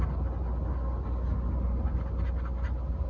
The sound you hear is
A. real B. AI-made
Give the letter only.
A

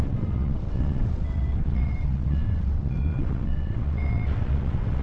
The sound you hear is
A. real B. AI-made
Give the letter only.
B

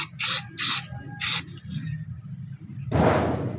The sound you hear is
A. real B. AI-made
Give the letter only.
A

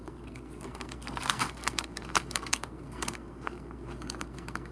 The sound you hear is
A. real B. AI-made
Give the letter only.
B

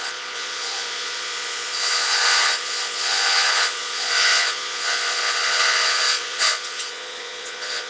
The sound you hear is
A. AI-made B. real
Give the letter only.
A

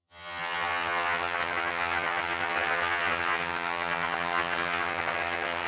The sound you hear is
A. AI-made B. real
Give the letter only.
A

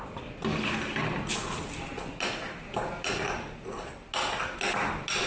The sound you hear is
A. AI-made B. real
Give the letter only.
B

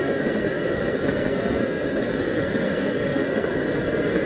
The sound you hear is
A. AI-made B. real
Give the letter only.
A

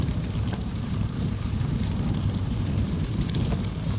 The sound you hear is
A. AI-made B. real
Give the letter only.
A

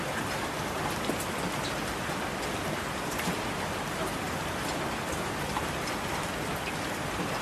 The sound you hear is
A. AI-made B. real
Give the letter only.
B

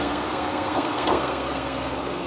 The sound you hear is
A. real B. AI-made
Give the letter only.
B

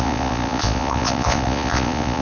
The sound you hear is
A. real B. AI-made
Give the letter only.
B